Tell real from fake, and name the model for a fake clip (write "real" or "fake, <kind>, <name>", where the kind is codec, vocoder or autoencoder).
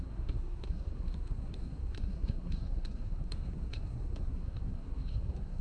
fake, codec, SNAC